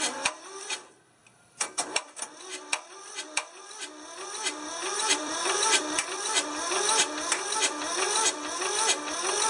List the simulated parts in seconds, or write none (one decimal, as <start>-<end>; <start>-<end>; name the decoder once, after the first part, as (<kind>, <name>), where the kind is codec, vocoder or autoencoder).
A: 1.2-2.2 (vocoder, BigVGAN v2); 4.8-5.8